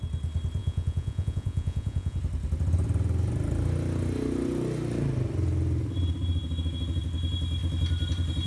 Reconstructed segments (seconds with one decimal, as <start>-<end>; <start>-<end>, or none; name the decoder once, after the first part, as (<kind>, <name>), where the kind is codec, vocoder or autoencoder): 0.6-2.2 (vocoder, Vocos)